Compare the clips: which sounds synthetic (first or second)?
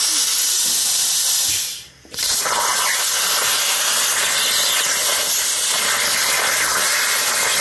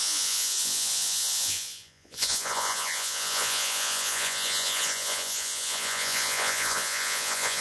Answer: second